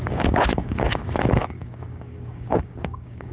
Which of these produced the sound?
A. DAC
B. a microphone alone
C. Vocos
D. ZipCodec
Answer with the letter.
A